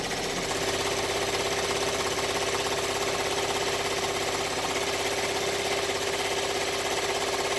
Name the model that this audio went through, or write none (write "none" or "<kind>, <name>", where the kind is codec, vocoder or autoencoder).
none